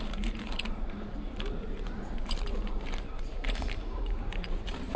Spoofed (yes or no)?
yes